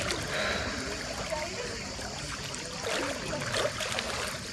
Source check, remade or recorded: recorded